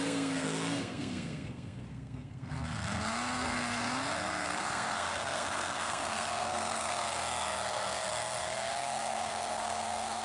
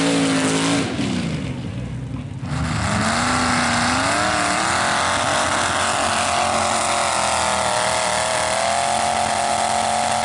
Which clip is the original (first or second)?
second